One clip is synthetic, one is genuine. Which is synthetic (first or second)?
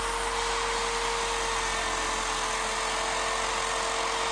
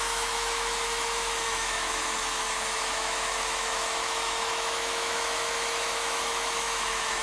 second